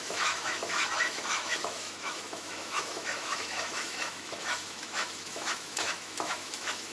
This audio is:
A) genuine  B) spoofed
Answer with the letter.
B